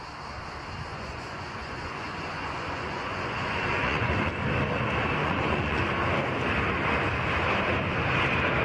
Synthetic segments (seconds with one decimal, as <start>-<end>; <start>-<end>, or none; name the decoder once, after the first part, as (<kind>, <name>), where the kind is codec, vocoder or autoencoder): 0.9-4.3 (vocoder, Vocos); 5.2-5.8